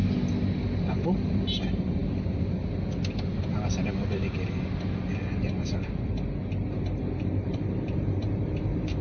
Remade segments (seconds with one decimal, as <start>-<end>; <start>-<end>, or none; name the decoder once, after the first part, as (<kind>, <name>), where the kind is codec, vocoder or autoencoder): 0.9-2.0 (vocoder, BigVGAN v2); 7.2-9.0